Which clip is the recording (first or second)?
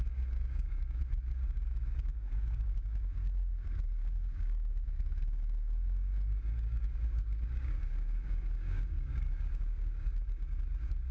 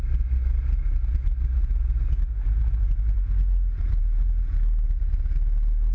second